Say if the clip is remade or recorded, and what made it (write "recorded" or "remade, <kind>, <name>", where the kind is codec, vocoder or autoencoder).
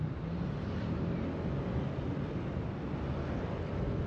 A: recorded